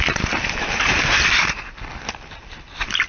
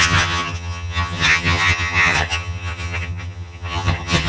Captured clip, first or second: first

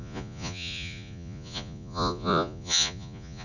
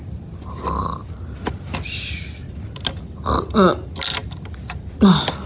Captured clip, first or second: second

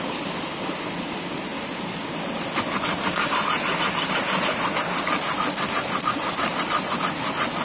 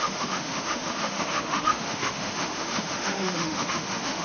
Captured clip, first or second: first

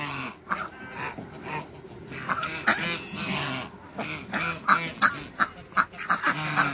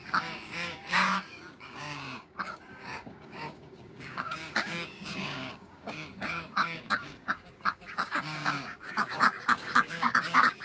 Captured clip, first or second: first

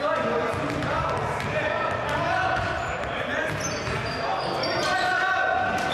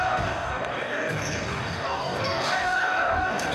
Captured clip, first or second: first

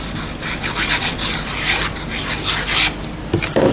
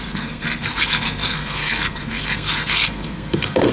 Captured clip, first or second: first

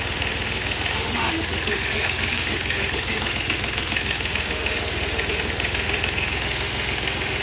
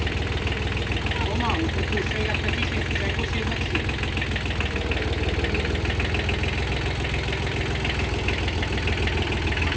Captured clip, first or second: second